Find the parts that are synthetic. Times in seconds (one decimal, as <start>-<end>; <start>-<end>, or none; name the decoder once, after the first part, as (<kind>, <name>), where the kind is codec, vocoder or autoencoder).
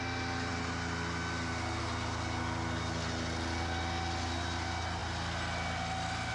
none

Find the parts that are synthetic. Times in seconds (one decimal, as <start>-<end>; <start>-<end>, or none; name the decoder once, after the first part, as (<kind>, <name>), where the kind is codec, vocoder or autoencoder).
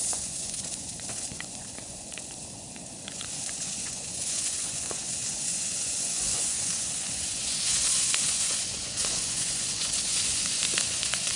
0.0-11.4 (vocoder, Vocos)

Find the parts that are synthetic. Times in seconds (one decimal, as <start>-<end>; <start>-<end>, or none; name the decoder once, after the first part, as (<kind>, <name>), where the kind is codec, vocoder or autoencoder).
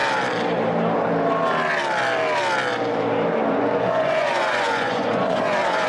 3.5-5.9 (vocoder, Vocos)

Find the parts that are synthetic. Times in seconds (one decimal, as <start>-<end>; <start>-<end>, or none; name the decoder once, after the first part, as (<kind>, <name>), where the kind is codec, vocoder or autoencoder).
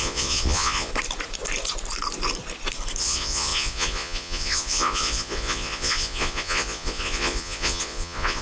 0.0-0.9 (vocoder, Vocos); 3.0-8.4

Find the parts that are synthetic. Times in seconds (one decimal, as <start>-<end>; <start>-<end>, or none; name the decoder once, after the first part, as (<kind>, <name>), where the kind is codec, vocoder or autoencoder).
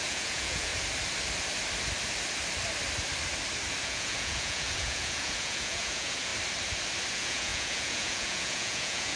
0.0-0.7 (vocoder, Vocos); 3.8-6.3; 7.1-9.2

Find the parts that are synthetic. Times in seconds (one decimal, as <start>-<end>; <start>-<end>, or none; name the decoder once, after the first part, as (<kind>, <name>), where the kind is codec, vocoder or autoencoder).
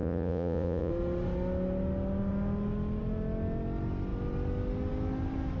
0.0-0.9 (vocoder, Vocos)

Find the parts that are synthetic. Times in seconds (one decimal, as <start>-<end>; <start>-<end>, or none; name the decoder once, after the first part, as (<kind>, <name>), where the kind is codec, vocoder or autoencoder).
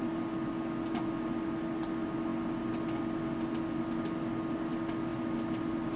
none